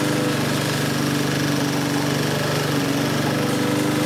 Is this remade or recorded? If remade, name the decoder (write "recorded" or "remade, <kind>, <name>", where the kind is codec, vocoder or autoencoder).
recorded